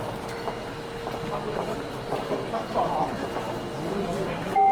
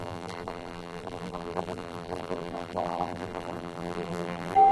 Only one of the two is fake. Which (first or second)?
second